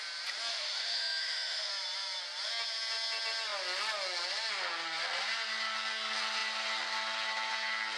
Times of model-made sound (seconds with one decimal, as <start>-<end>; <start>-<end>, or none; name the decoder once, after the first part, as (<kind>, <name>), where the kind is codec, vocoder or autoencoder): 0.5-1.7 (autoencoder, DAC-VAE)